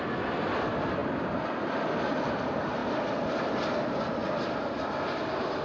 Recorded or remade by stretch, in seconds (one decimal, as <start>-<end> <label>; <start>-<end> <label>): 0.0-5.6 recorded